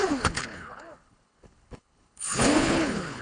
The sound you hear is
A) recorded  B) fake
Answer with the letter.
B